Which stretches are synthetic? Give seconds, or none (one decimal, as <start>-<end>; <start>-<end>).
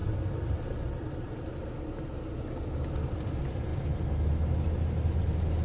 none